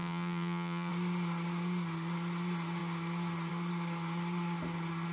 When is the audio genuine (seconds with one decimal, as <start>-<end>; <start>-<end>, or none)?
0.9-5.1